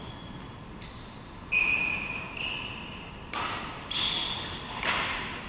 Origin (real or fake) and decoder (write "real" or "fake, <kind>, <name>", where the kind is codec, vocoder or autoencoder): real